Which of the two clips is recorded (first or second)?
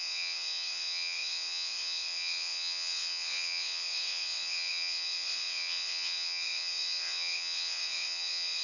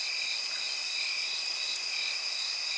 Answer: second